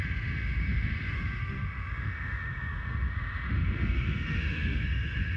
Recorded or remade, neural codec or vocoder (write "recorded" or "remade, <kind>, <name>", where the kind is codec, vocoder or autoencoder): remade, autoencoder, DAC-VAE